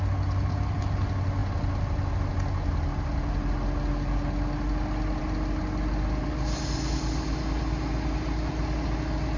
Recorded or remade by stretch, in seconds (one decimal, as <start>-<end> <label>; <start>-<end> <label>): 0.0-9.4 recorded